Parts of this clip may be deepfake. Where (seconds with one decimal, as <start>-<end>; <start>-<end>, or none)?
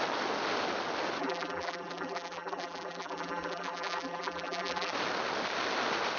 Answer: 1.2-4.9